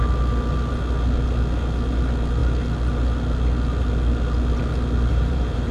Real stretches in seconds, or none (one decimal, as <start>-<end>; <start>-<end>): 0.0-5.1